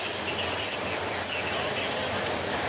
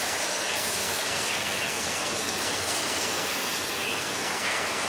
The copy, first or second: second